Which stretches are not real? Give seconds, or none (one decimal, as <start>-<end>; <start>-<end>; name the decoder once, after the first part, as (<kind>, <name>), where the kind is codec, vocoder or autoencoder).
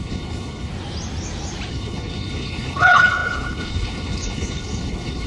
0.0-0.7 (codec, HILCodec); 1.7-5.3